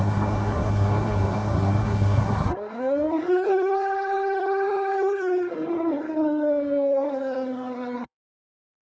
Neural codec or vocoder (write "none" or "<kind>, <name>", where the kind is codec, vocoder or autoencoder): codec, SNAC